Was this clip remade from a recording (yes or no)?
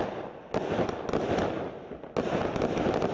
no